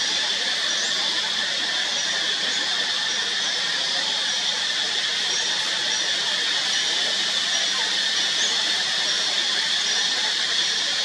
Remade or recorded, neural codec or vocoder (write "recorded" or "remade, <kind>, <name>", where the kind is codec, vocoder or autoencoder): recorded